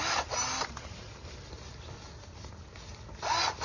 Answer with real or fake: real